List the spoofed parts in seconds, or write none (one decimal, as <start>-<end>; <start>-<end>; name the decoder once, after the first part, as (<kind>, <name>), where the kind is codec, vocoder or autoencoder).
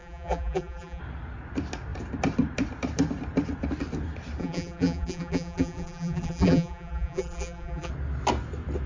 0.0-1.0 (vocoder, BigVGAN v2); 4.4-7.9